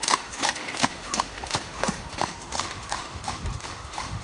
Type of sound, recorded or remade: remade